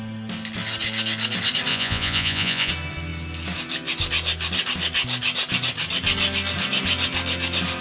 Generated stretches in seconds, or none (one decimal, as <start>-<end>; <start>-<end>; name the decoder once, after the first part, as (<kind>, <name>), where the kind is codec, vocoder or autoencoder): 1.7-2.7 (vocoder, Vocos)